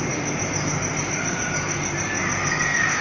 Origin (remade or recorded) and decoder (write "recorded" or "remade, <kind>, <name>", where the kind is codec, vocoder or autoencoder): recorded